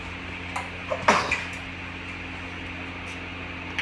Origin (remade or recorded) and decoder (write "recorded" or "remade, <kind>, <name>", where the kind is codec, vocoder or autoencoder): recorded